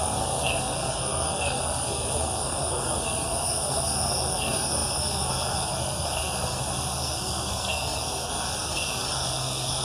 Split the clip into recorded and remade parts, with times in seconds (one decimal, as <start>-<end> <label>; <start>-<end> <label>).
0.0-9.8 remade